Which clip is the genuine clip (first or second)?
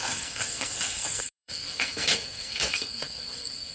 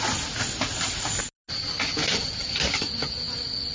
second